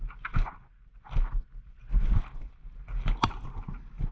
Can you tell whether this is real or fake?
real